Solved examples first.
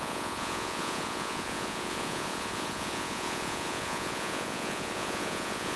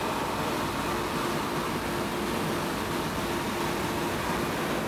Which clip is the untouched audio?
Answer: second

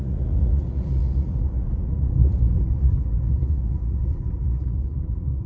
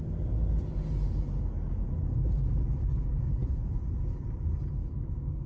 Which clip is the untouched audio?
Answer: second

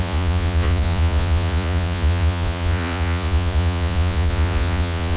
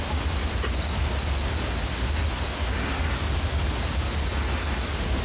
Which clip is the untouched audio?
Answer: second